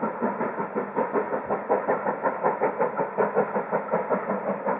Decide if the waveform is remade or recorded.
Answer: recorded